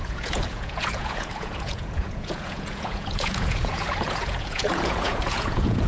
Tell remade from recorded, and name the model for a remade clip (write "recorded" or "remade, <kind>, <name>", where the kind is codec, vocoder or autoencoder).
remade, vocoder, Vocos